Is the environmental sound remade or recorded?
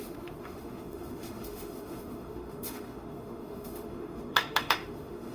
remade